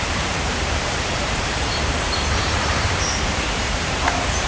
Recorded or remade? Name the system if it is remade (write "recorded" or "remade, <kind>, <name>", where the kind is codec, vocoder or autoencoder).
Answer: remade, vocoder, BigVGAN v2